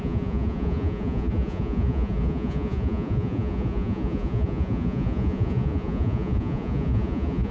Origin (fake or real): fake